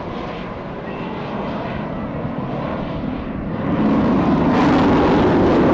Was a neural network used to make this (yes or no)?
no